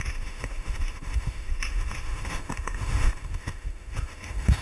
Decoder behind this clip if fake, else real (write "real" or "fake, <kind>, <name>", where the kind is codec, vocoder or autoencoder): fake, autoencoder, DAC-VAE